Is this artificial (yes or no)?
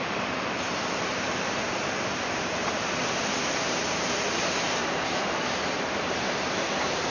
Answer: yes